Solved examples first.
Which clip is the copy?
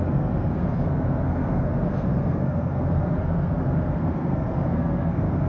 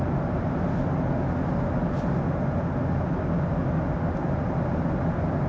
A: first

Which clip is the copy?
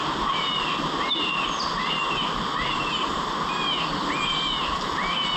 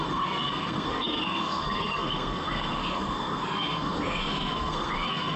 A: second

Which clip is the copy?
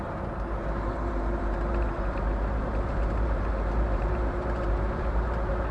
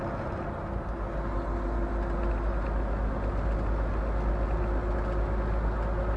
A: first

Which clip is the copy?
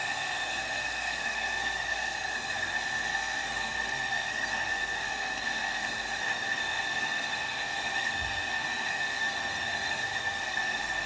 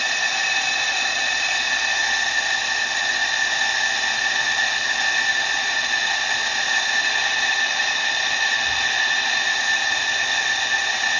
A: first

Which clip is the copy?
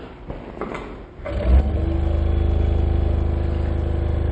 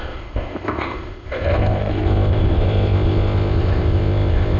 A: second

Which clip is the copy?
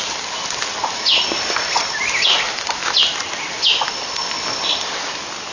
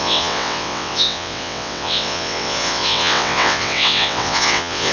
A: second